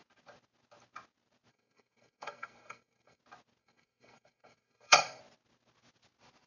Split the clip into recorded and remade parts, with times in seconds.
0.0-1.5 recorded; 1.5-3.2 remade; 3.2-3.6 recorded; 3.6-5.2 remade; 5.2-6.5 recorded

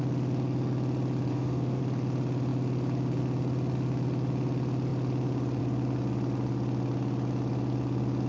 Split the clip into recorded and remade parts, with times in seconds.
0.0-1.3 recorded; 1.3-1.8 remade; 1.8-8.3 recorded